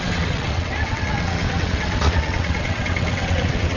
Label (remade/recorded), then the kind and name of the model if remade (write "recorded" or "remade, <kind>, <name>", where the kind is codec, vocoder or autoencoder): remade, vocoder, WaveNeXt